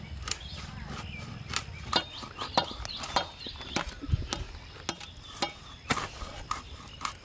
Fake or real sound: real